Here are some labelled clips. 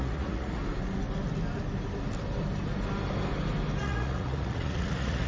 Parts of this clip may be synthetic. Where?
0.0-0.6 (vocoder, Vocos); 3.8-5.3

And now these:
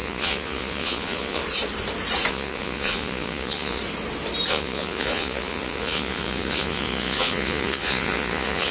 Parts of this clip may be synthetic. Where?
0.0-1.4 (vocoder, Vocos); 2.3-3.8; 4.5-8.7

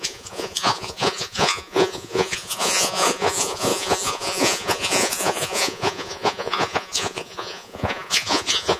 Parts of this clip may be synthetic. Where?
0.0-8.8 (vocoder, Vocos)

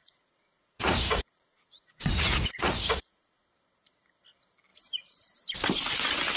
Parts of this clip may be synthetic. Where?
0.0-3.5 (vocoder, Vocos)

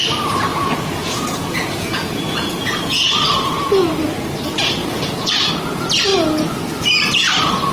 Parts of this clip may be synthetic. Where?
0.5-3.1 (vocoder, Vocos); 4.8-5.3